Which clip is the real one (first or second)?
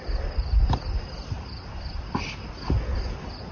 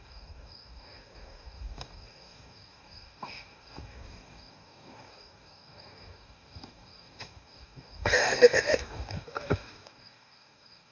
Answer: first